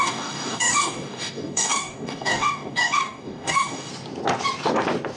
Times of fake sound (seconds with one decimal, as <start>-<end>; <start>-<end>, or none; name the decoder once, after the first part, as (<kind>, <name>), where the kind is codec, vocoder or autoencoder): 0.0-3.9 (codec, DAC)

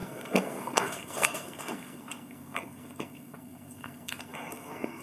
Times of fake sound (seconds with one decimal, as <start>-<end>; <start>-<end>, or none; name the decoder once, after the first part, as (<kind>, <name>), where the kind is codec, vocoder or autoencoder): 0.0-5.0 (codec, SNAC)

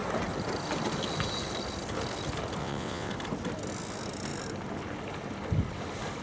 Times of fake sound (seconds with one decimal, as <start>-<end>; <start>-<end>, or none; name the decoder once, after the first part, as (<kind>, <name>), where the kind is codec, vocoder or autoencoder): 2.6-3.1 (vocoder, WaveNeXt)

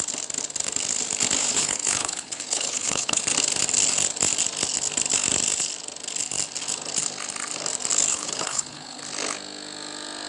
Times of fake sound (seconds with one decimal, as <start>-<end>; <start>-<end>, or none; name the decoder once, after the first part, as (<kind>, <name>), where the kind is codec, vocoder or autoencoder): 1.5-3.2 (codec, HILCodec); 8.1-9.0

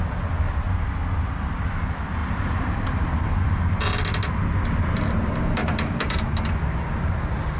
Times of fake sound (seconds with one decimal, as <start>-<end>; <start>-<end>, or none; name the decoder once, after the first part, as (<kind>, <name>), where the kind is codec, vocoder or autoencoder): 2.2-4.0 (vocoder, BigVGAN v2); 5.6-6.4